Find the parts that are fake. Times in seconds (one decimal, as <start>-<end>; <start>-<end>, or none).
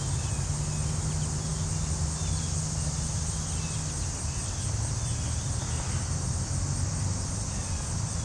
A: none